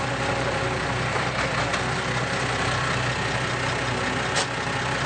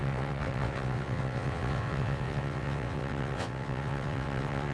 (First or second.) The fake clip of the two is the second